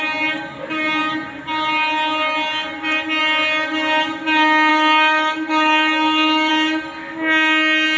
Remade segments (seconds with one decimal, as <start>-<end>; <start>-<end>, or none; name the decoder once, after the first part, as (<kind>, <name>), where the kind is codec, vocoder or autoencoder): 4.7-6.5 (autoencoder, DAC-VAE)